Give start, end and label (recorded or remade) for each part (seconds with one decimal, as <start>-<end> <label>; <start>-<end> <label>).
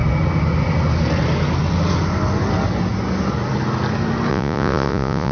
0.0-4.3 recorded; 4.3-5.3 remade